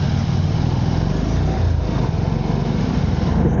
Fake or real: real